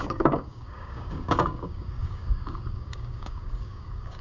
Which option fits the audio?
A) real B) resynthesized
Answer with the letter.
B